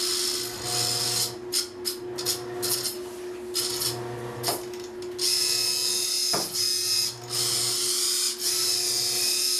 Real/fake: real